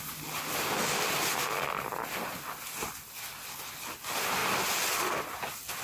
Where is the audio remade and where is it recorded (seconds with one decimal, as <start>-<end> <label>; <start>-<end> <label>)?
0.0-5.8 recorded